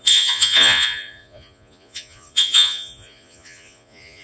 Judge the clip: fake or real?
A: fake